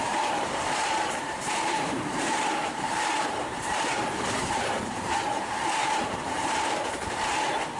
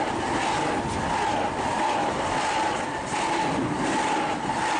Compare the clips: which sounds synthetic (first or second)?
first